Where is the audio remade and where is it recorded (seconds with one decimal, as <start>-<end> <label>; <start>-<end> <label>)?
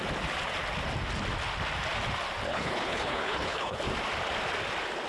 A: 0.0-2.5 recorded; 2.5-3.8 remade; 3.8-5.1 recorded